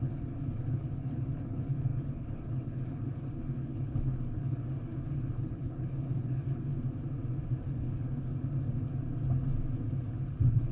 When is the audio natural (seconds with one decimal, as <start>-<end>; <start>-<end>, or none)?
6.7-7.6; 8.3-10.1